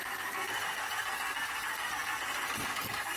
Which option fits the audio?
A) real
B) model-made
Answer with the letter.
B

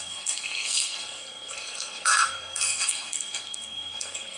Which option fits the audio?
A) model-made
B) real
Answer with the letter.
A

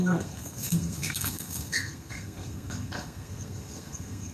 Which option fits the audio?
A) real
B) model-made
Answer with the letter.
B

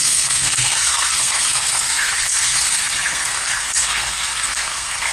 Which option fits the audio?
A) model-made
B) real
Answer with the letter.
A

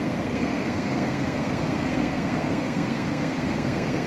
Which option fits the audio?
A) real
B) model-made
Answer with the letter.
B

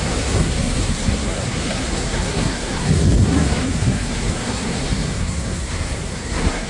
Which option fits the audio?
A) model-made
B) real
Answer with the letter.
A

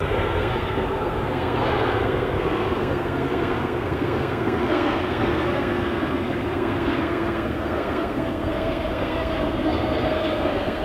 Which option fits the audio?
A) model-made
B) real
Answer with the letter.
A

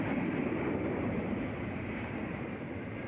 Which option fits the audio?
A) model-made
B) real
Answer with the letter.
B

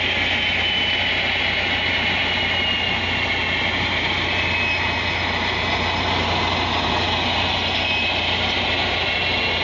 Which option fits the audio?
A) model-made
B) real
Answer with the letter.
B